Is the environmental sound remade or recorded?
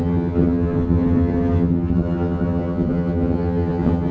remade